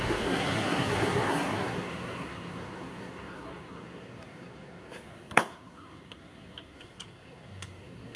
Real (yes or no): no